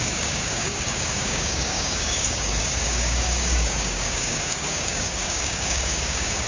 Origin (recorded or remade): remade